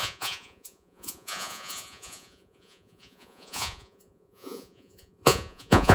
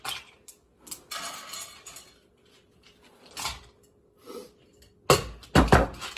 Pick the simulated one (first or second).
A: first